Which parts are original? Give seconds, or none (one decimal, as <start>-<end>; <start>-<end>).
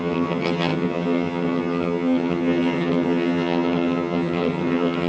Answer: none